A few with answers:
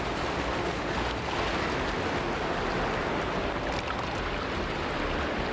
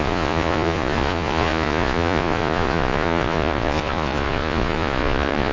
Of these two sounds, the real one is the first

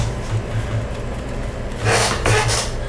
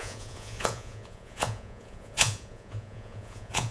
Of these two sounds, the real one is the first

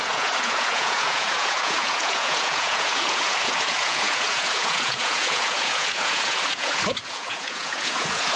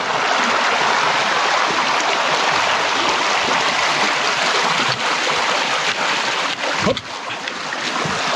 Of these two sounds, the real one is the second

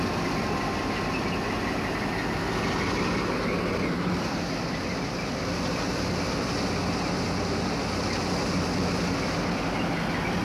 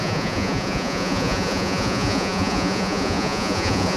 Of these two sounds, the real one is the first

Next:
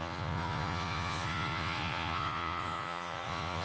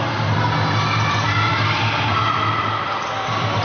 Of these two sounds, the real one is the second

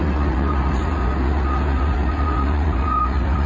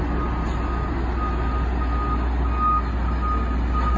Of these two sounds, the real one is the second